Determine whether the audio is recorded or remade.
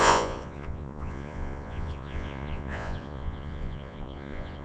remade